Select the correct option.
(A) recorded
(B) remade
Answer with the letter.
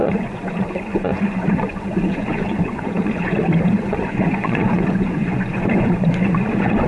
B